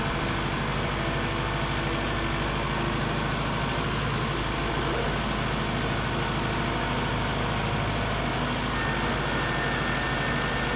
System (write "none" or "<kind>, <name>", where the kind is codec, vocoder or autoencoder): none